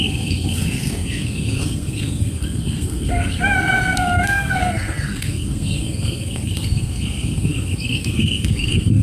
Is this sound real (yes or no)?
no